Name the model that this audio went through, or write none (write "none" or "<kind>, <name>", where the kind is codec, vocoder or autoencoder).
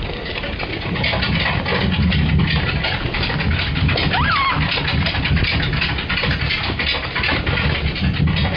none